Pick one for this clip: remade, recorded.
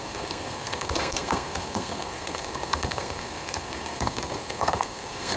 remade